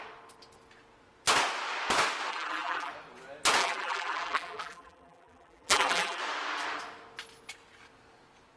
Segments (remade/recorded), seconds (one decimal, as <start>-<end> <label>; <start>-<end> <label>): 0.0-2.3 recorded; 2.3-2.9 remade; 2.9-3.6 recorded; 3.6-6.2 remade; 6.2-8.6 recorded